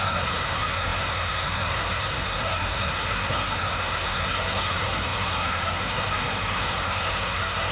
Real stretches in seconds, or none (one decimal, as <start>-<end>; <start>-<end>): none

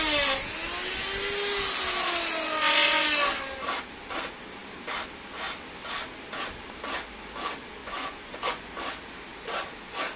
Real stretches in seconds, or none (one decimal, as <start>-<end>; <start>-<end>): 0.0-7.8; 8.7-10.2

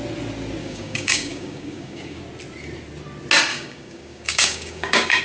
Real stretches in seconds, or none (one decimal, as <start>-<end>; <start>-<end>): 0.0-0.6; 2.2-3.5

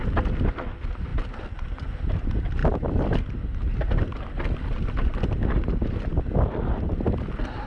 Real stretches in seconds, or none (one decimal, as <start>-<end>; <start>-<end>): 0.0-7.7

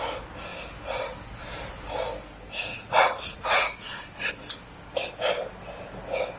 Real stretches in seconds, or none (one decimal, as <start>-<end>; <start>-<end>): 0.0-2.7; 4.3-6.4

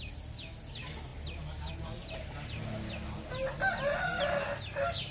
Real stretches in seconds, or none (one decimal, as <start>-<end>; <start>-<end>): 0.0-5.1